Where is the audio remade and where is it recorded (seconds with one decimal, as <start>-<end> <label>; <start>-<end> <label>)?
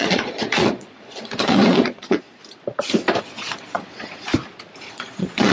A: 0.0-2.4 remade; 2.4-3.2 recorded; 3.2-4.3 remade; 4.3-4.9 recorded; 4.9-5.5 remade